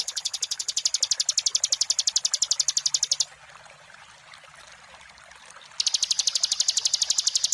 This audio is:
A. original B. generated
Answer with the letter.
A